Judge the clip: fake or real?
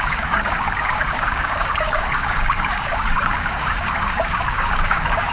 fake